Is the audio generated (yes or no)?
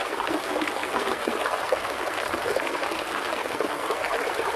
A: yes